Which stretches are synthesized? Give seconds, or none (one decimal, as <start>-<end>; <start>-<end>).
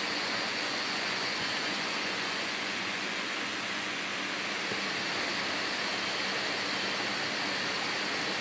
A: 0.0-4.1